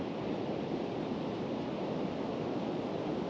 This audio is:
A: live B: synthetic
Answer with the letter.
B